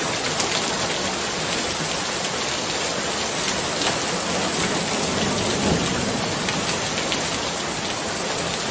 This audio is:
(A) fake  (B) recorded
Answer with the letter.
B